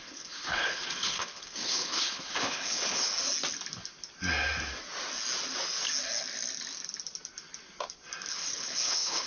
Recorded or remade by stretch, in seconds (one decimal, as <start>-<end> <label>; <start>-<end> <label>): 0.0-3.1 remade; 3.1-8.3 recorded; 8.3-9.3 remade